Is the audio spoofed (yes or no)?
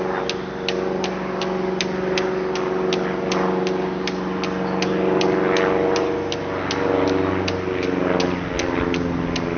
no